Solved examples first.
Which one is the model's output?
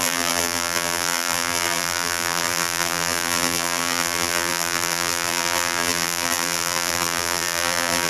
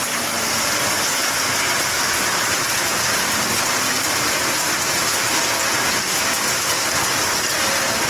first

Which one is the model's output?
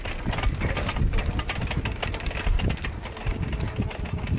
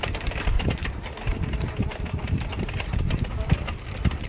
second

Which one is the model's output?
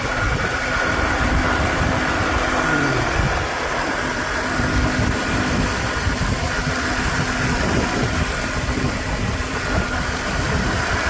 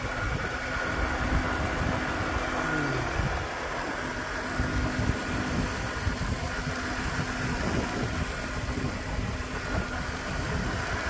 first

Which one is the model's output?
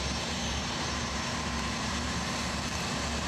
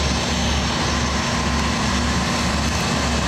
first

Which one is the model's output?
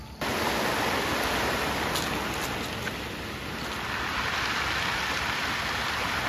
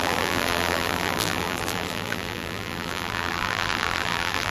second